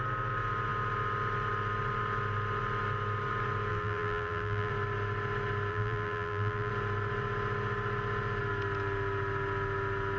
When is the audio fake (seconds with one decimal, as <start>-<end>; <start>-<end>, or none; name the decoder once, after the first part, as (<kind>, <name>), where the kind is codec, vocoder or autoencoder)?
3.7-4.7 (vocoder, BigVGAN v2); 5.7-6.7